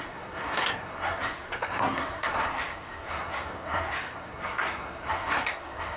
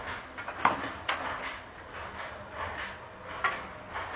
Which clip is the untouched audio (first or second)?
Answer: second